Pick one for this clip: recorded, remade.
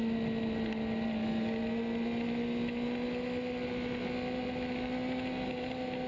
recorded